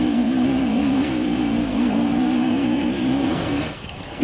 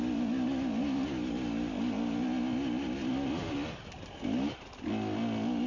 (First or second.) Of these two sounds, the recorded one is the second